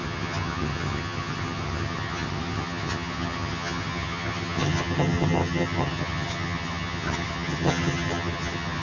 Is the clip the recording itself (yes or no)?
no